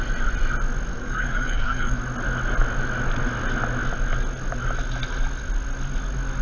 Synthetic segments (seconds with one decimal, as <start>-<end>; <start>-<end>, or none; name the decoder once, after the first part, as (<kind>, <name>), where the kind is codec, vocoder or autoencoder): 0.9-2.0 (codec, DAC)